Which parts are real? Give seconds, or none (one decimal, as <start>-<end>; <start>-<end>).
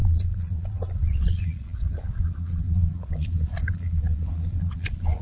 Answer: none